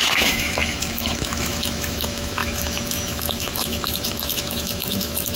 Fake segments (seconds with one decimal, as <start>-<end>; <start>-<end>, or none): 0.0-5.4